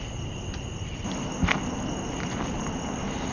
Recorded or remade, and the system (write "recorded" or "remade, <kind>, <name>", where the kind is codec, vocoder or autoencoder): recorded